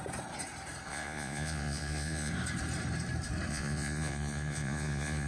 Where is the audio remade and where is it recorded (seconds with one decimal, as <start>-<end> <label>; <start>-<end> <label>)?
0.0-0.9 recorded; 0.9-2.3 remade; 2.3-3.5 recorded; 3.5-5.3 remade